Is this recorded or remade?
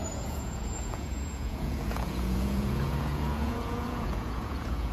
remade